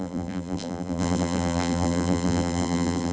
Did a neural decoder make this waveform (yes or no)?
yes